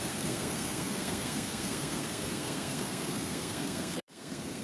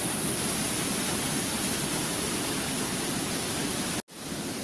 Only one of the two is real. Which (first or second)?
second